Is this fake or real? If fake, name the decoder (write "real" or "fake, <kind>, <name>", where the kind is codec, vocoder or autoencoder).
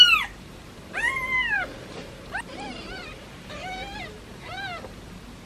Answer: fake, vocoder, BigVGAN v2